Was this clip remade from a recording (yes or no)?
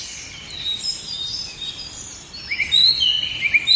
yes